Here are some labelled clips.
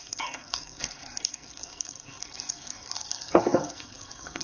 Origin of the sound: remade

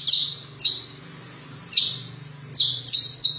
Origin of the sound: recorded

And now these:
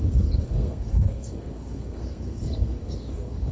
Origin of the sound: remade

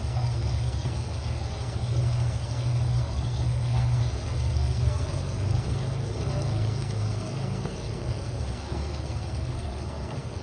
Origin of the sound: remade